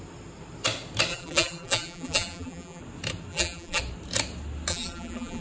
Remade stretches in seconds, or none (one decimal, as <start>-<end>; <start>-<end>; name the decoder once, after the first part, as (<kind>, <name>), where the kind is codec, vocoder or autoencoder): 1.1-2.8 (vocoder, BigVGAN v2); 3.3-3.8; 4.7-5.4